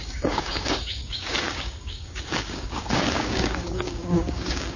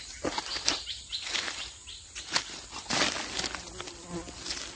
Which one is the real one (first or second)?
second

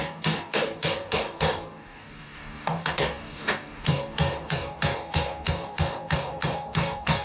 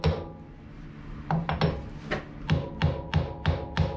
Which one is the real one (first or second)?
second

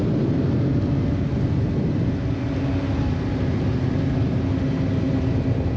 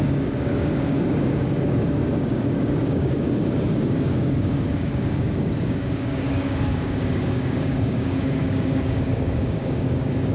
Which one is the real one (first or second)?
first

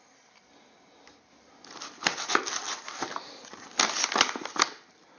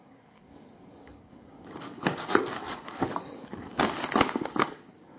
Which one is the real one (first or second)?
first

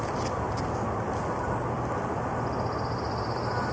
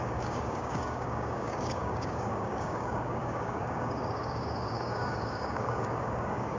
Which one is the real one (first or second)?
first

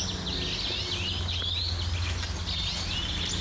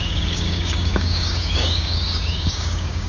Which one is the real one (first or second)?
first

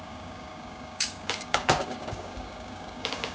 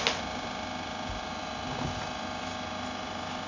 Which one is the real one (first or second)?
second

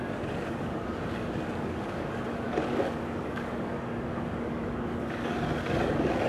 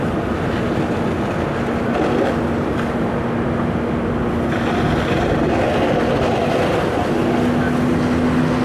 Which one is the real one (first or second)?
second